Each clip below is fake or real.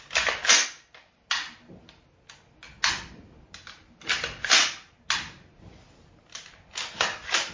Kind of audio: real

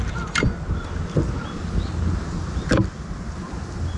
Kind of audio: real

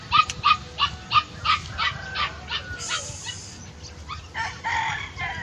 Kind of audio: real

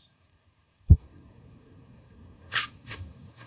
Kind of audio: fake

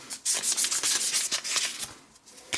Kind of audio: real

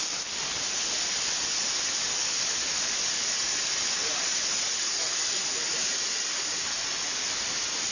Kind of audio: real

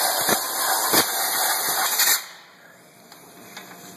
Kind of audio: fake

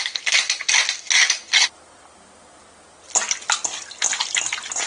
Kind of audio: real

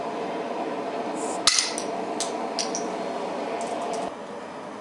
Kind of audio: real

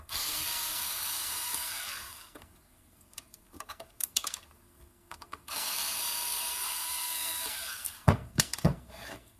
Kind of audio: fake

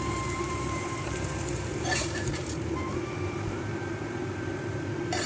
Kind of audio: fake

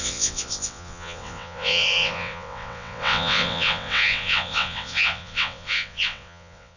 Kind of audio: fake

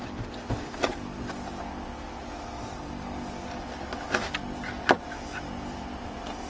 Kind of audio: real